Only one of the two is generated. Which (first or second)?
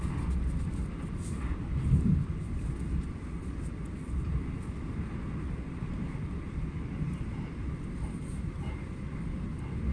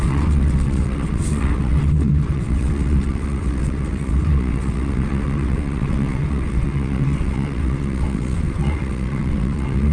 second